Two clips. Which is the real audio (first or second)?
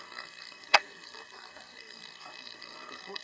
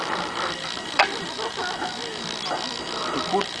second